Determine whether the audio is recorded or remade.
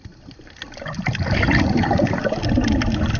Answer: recorded